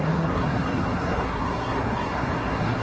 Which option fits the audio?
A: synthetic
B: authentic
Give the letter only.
A